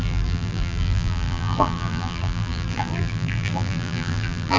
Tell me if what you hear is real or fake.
fake